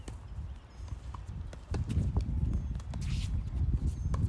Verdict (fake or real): real